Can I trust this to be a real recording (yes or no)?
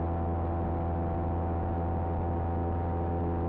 yes